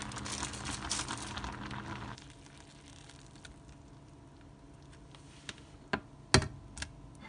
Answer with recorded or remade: recorded